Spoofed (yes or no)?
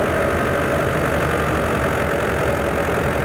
no